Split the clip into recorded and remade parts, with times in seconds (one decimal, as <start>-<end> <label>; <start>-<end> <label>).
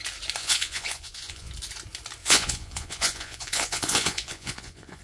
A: 0.0-0.4 recorded; 0.4-1.5 remade; 1.5-2.2 recorded; 2.2-5.0 remade